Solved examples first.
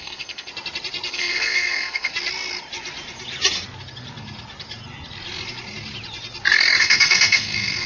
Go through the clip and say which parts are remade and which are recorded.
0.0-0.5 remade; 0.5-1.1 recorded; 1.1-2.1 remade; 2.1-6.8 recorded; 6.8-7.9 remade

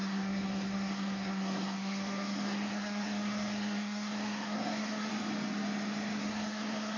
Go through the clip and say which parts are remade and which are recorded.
0.0-5.1 remade; 5.1-6.2 recorded; 6.2-7.0 remade

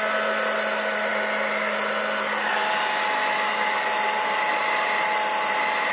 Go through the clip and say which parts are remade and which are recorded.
0.0-5.9 recorded

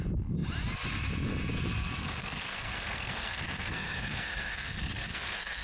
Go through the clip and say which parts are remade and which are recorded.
0.0-2.0 recorded; 2.0-5.6 remade